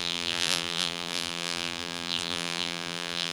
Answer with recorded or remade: remade